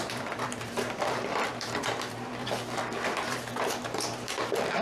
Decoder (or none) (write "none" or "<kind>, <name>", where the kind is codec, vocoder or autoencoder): vocoder, BigVGAN v2